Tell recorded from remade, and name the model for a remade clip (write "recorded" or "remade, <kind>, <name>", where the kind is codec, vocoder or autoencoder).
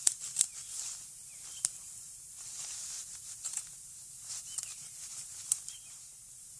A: remade, vocoder, BigVGAN v2